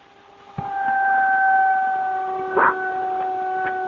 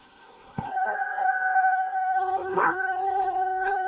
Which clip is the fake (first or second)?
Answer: second